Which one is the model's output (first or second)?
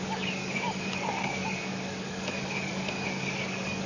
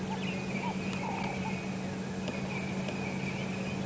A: first